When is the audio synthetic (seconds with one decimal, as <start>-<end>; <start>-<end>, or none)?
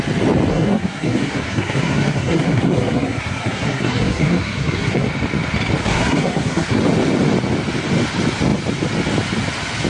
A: 0.5-5.1; 5.8-6.8